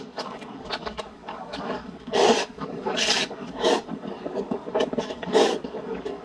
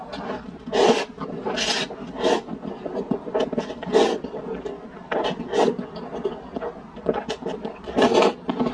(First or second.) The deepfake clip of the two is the first